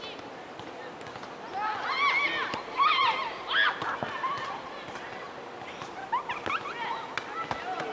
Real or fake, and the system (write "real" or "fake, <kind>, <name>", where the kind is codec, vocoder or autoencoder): real